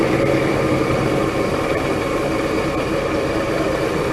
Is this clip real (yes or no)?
no